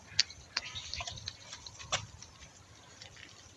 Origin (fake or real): real